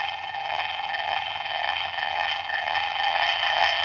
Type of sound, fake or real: fake